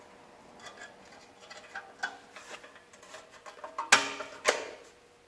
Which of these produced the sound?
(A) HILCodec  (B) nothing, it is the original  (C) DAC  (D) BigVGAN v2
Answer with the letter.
B